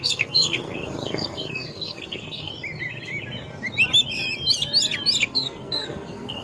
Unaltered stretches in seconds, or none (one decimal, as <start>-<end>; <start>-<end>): 2.5-5.2

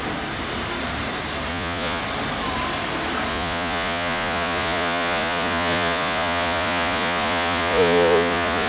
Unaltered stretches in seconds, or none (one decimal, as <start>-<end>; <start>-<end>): 0.0-1.5; 2.0-3.3